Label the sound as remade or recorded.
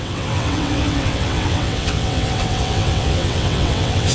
remade